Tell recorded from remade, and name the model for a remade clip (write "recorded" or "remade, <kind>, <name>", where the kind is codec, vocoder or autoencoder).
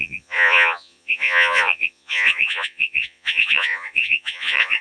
remade, vocoder, Vocos